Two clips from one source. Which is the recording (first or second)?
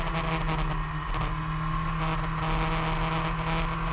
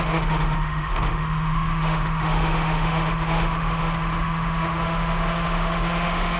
first